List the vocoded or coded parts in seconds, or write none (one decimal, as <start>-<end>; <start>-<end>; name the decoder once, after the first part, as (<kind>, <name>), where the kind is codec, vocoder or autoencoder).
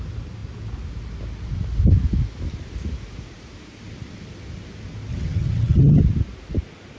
5.1-6.0 (vocoder, HiFi-GAN)